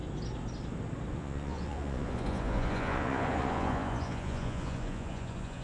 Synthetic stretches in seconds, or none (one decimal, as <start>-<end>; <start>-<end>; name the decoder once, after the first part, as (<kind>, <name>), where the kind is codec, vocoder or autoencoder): 1.1-5.6 (vocoder, Vocos)